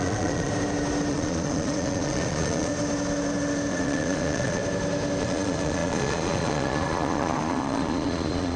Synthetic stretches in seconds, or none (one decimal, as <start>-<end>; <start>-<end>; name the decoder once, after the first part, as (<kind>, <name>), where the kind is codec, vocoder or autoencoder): 0.0-0.5 (vocoder, Vocos); 1.1-2.7; 3.7-4.6; 5.2-8.6